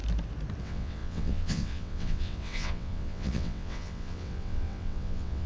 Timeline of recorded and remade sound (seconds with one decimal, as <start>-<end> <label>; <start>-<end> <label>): 0.0-0.6 recorded; 0.6-5.5 remade